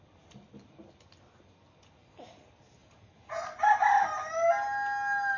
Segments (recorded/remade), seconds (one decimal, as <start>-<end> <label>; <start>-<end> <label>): 0.0-2.8 recorded; 2.8-3.4 remade; 3.4-5.4 recorded